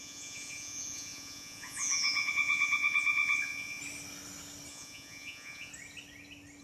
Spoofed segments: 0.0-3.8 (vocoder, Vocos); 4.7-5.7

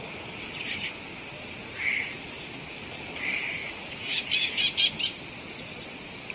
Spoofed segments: 1.6-2.6 (vocoder, Vocos); 3.6-4.2